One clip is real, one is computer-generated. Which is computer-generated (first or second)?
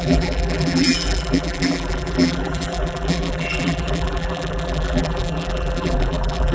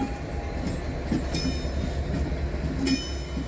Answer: first